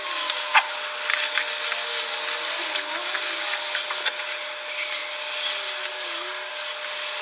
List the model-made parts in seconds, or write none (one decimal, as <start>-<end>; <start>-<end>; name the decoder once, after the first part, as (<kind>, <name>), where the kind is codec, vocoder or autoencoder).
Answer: none